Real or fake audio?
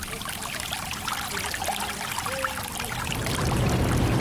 real